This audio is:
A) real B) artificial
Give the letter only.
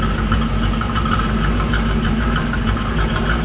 B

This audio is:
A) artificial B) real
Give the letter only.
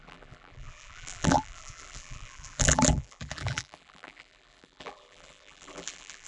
A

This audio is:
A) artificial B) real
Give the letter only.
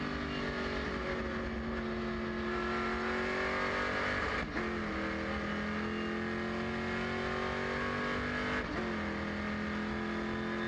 B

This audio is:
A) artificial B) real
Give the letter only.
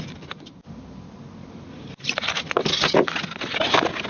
B